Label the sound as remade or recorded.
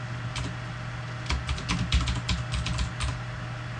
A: recorded